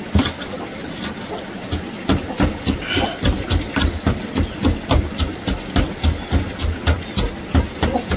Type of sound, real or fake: real